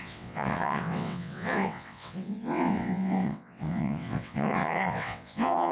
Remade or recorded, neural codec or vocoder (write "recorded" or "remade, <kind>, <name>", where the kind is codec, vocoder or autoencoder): remade, vocoder, WaveNeXt